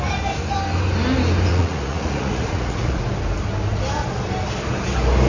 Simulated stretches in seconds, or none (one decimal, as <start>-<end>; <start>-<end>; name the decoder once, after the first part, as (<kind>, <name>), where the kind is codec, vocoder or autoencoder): 1.5-3.0 (vocoder, Vocos)